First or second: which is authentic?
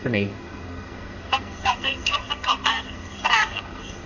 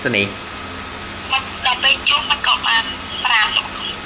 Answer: second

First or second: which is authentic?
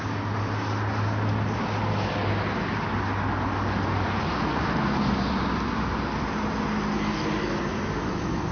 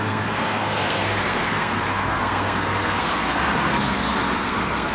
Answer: first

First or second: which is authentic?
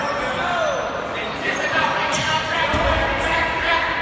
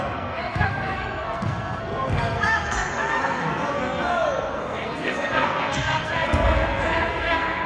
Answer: first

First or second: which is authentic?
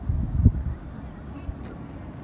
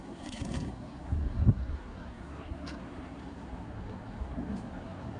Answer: first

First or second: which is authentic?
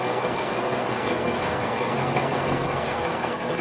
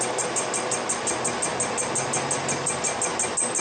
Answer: second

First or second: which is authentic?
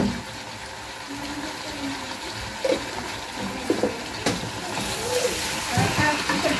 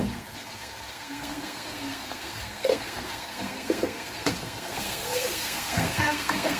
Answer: first